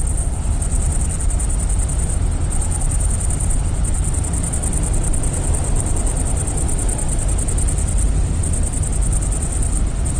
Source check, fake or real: real